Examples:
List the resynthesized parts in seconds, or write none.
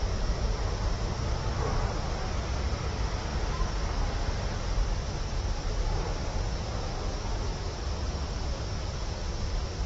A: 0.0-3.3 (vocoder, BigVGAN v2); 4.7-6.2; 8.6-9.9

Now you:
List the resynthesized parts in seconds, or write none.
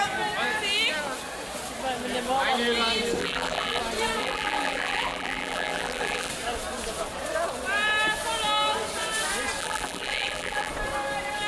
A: 3.2-3.8 (vocoder, BigVGAN v2); 4.2-6.3; 9.6-10.7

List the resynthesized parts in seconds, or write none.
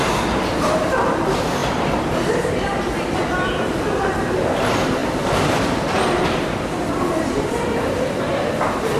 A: 1.6-2.8 (vocoder, BigVGAN v2); 5.0-6.4